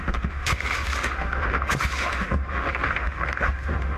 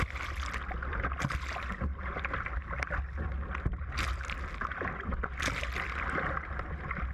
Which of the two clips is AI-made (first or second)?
first